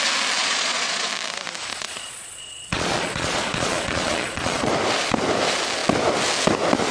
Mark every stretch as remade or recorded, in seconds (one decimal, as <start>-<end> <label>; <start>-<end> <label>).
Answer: 0.0-0.4 recorded; 0.4-1.1 remade; 1.1-1.7 recorded; 1.7-4.7 remade; 4.7-6.9 recorded